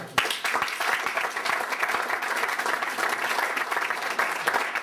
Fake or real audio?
real